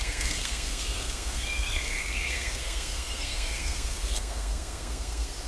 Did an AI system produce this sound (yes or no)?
yes